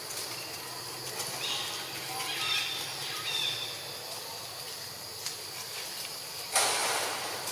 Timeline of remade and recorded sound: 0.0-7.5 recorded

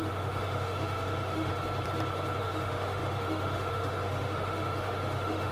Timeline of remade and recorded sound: 0.0-1.5 remade; 1.5-2.4 recorded; 2.4-5.5 remade

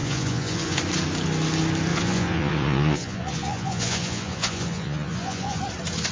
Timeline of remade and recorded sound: 0.0-0.8 remade; 0.8-1.9 recorded; 1.9-5.6 remade; 5.6-6.1 recorded

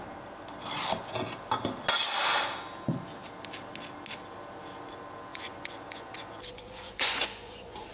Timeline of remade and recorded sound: 0.0-5.3 recorded; 5.3-7.9 remade

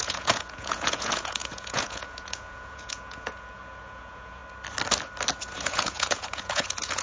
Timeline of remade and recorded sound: 0.0-4.4 remade; 4.4-5.4 recorded; 5.4-7.0 remade

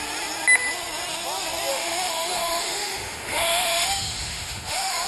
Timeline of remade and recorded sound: 0.0-1.7 recorded; 1.7-5.1 remade